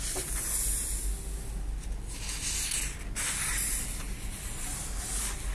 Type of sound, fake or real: real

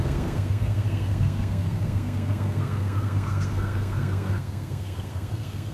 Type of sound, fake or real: fake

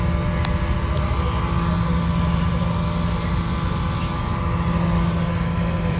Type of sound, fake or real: real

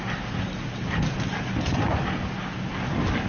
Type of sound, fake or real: real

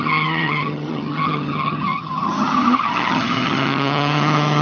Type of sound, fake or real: fake